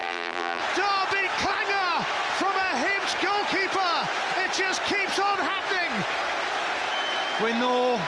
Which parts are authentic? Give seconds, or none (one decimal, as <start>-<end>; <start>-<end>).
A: 0.6-8.1

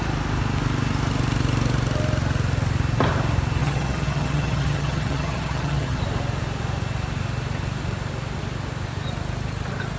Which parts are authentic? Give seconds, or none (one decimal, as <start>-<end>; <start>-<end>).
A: 0.0-3.6; 6.0-10.0